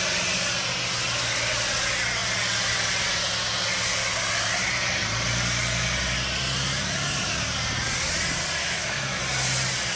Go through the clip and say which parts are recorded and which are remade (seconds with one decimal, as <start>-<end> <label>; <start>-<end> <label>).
0.0-8.6 recorded; 8.6-9.2 remade; 9.2-10.0 recorded